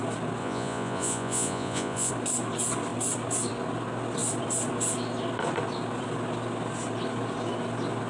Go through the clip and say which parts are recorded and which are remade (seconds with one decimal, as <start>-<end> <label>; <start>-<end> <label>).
0.0-0.4 recorded; 0.4-2.1 remade; 2.1-8.1 recorded